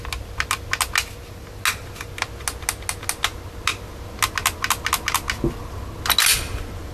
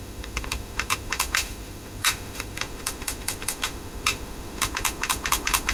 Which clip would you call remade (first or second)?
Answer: second